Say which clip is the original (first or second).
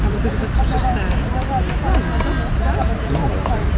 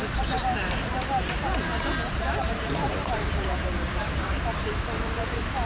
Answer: first